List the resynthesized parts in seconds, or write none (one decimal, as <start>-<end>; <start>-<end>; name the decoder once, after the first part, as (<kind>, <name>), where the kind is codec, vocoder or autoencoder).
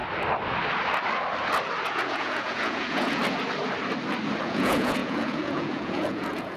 1.9-3.2 (vocoder, Vocos); 4.4-6.6